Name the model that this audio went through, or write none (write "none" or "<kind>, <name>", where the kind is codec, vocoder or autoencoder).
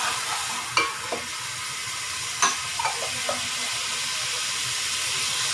none